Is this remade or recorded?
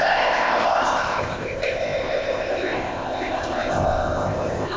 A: remade